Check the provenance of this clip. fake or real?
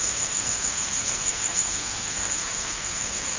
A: fake